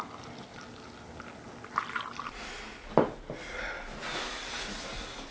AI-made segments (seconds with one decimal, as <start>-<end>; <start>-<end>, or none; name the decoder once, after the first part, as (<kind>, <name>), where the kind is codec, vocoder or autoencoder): none